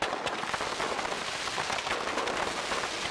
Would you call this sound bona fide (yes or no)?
yes